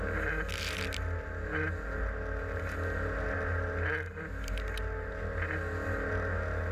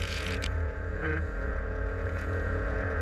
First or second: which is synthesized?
second